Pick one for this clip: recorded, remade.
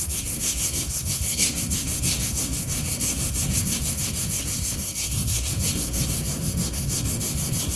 remade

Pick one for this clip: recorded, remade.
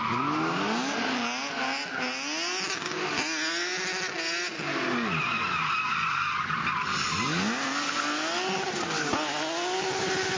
recorded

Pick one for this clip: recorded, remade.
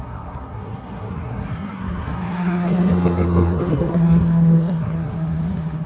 remade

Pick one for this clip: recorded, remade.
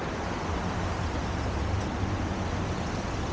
recorded